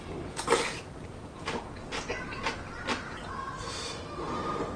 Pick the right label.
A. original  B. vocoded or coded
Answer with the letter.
A